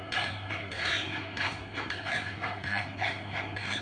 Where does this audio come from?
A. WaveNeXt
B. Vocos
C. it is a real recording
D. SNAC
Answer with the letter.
D